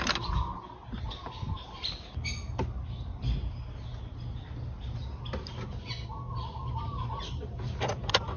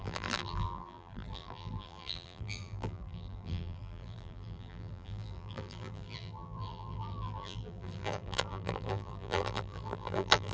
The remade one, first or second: second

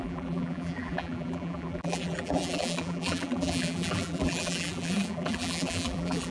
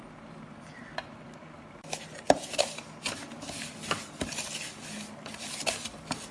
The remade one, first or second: first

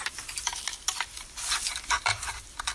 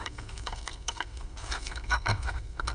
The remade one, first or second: second